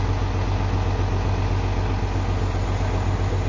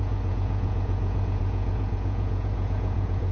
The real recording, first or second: first